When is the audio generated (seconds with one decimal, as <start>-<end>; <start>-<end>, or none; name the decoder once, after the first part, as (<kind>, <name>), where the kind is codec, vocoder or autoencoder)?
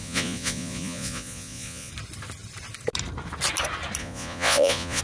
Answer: 0.0-1.9 (vocoder, Vocos); 4.0-5.0